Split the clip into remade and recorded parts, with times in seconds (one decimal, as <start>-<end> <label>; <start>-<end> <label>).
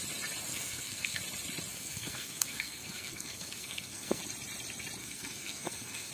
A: 0.0-0.5 recorded; 0.5-1.2 remade; 1.2-1.7 recorded; 1.7-4.2 remade; 4.2-5.0 recorded; 5.0-6.1 remade